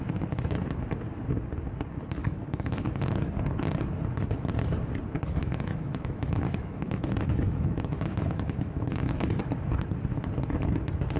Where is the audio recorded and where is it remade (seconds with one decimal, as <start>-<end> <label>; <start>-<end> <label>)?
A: 0.0-2.2 recorded; 2.2-2.9 remade; 2.9-5.4 recorded; 5.4-9.4 remade; 9.4-11.2 recorded